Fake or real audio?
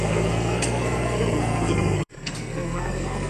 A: fake